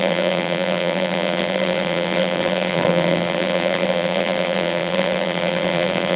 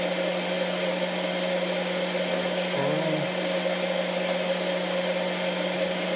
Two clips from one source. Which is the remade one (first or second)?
first